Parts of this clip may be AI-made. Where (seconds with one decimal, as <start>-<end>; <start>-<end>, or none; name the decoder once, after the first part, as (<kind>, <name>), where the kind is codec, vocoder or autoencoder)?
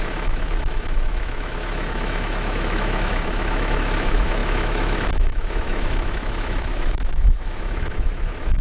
0.0-8.6 (autoencoder, DAC-VAE)